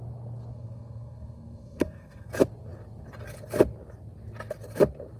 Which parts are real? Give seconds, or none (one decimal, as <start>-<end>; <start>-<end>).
0.0-0.5; 2.3-5.2